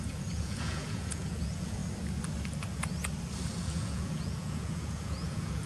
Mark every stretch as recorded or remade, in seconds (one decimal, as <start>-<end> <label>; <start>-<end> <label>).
0.0-1.8 remade; 1.8-3.6 recorded; 3.6-5.7 remade